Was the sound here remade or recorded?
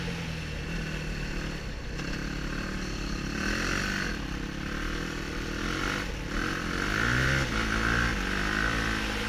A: recorded